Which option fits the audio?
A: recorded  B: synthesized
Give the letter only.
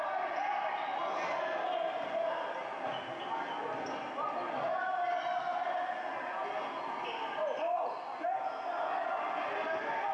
A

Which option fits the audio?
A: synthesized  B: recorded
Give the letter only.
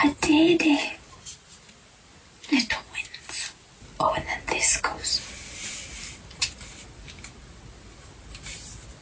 B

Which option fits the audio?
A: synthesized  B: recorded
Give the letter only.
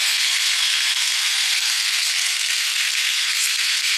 A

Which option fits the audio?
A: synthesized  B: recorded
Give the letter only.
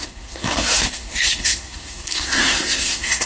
A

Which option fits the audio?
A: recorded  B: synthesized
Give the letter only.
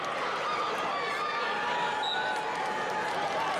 A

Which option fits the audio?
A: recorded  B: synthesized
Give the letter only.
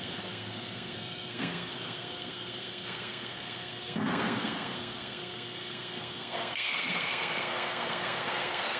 B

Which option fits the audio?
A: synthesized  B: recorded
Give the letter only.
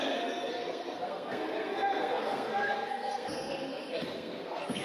A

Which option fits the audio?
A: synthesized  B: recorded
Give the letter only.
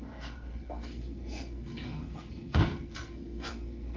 A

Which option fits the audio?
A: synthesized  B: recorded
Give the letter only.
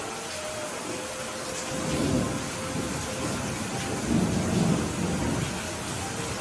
B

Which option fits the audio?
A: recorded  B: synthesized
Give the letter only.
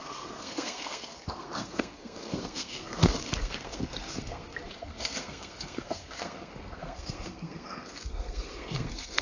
B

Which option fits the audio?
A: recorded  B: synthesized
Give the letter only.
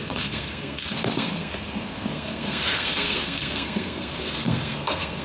B